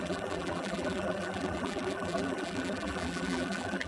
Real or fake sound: fake